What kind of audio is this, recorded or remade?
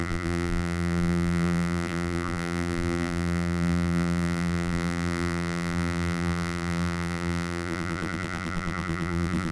remade